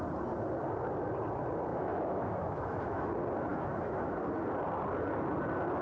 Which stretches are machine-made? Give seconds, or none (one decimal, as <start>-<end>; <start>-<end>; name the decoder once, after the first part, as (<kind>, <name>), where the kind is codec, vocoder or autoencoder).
1.7-3.1 (autoencoder, DAC-VAE); 3.5-4.2